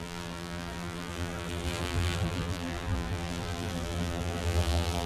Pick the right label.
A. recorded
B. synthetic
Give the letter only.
B